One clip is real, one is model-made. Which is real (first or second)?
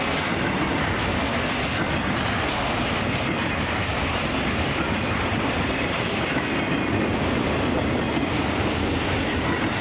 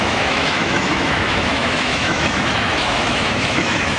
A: first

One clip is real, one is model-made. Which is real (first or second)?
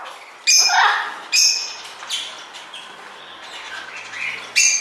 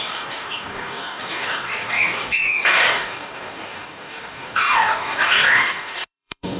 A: first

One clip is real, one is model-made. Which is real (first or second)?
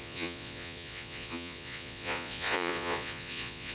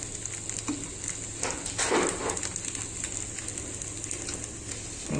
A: second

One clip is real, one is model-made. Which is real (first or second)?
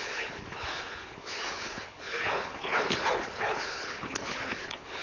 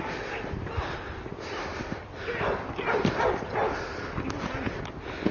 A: second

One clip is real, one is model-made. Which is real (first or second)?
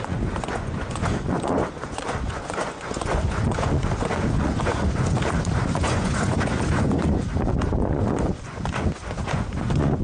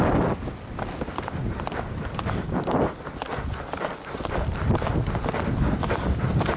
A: second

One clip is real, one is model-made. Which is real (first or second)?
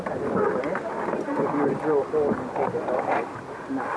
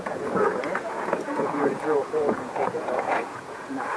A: first